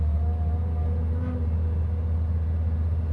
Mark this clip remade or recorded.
recorded